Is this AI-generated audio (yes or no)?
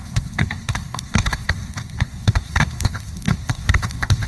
yes